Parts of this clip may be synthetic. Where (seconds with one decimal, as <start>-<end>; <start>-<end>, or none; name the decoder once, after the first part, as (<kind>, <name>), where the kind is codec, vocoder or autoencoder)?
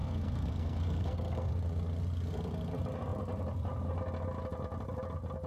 0.0-1.5 (codec, SNAC)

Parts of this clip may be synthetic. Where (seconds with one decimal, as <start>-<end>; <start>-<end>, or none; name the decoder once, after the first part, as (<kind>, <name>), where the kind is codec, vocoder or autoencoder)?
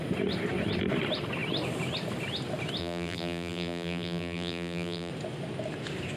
2.8-5.1 (vocoder, BigVGAN v2)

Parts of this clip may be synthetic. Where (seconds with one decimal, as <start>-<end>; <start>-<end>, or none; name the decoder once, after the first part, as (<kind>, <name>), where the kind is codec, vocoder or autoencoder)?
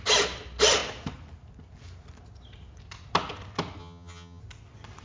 3.8-4.4 (vocoder, HiFi-GAN)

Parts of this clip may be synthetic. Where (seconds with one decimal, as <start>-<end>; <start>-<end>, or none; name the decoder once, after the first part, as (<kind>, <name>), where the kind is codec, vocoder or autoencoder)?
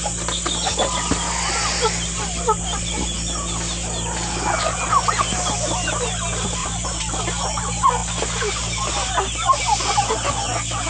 6.6-7.1 (vocoder, BigVGAN v2)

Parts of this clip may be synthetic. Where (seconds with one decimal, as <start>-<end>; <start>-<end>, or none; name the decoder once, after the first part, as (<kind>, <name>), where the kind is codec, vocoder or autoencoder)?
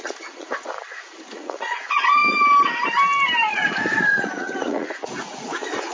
0.0-2.2 (vocoder, Vocos); 3.5-5.9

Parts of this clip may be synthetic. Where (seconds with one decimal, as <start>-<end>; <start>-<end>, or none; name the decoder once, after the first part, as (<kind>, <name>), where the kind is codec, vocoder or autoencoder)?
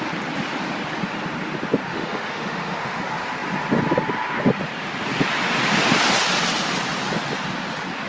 1.9-3.0 (autoencoder, DAC-VAE)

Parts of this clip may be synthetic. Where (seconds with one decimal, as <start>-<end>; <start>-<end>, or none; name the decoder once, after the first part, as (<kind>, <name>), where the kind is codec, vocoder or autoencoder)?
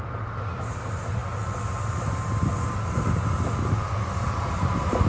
0.0-1.2 (vocoder, BigVGAN v2); 4.2-5.1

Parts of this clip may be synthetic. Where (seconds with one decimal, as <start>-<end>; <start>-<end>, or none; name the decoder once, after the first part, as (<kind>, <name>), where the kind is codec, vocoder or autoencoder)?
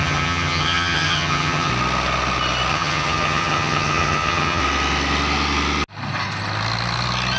0.0-1.7 (vocoder, HiFi-GAN); 2.7-4.6